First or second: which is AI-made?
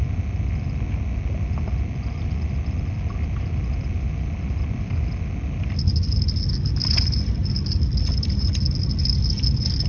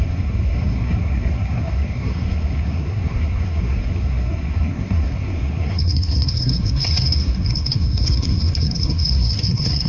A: second